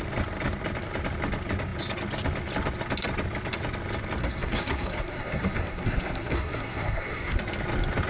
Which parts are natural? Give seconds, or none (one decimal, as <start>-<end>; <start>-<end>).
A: 0.0-4.2; 7.4-8.1